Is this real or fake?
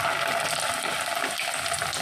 real